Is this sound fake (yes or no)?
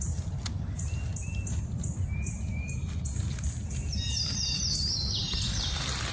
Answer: no